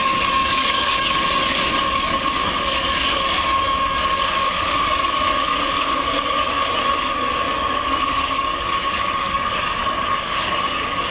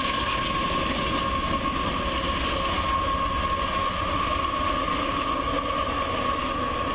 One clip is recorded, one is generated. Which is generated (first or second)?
first